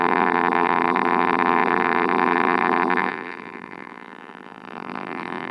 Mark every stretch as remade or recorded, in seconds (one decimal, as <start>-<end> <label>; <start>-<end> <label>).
0.0-5.5 remade